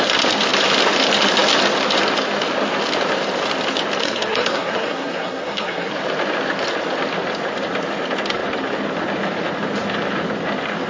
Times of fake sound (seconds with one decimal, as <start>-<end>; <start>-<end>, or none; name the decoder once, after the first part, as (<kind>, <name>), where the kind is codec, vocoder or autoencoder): 4.0-5.9 (codec, SNAC)